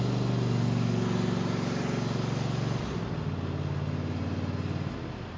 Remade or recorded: recorded